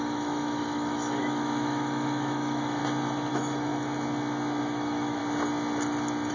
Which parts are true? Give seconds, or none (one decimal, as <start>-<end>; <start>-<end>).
2.8-3.3; 3.7-4.6; 5.2-6.3